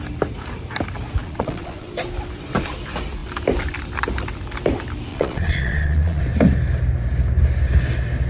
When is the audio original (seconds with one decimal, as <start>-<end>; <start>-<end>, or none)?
0.0-1.2; 1.9-5.1; 6.2-8.3